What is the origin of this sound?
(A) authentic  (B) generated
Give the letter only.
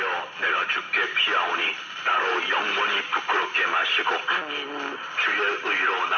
A